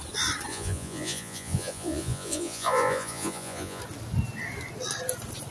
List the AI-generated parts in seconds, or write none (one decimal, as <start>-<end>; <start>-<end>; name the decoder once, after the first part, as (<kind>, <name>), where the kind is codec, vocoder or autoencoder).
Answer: 0.5-3.8 (vocoder, Vocos)